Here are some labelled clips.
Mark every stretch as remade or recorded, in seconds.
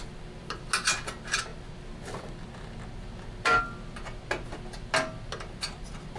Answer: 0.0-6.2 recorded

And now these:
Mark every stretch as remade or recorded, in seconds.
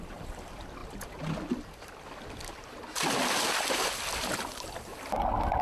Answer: 0.0-0.8 remade; 0.8-3.9 recorded; 3.9-4.9 remade; 4.9-5.6 recorded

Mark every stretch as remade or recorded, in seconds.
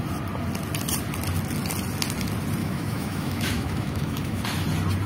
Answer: 0.0-2.6 recorded; 2.6-4.4 remade; 4.4-5.1 recorded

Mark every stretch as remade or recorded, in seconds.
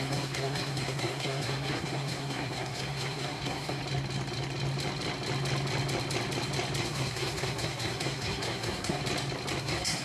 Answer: 0.0-3.8 remade; 3.8-6.8 recorded; 6.8-9.0 remade; 9.0-9.6 recorded; 9.6-10.0 remade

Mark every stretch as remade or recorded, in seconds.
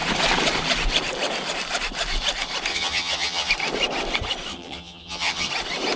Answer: 0.0-2.7 recorded; 2.7-3.5 remade; 3.5-4.5 recorded; 4.5-5.5 remade; 5.5-6.0 recorded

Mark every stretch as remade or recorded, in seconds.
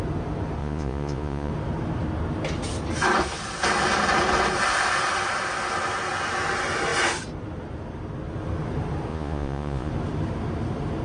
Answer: 0.0-0.6 recorded; 0.6-1.5 remade; 1.5-9.1 recorded; 9.1-9.9 remade; 9.9-11.0 recorded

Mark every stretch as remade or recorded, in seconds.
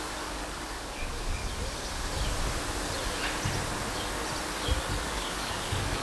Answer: 0.0-1.4 remade; 1.4-5.0 recorded; 5.0-6.0 remade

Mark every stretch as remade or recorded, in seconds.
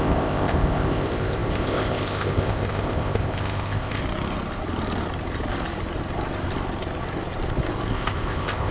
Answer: 0.0-4.0 remade; 4.0-7.9 recorded; 7.9-8.7 remade